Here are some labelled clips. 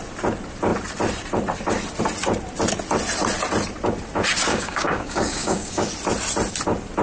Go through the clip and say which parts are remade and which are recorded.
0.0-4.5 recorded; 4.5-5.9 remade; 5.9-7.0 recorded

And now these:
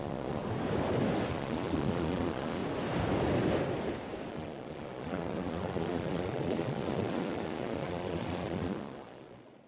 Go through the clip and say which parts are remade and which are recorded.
0.0-0.4 remade; 0.4-1.3 recorded; 1.3-2.6 remade; 2.6-4.3 recorded; 4.3-9.7 remade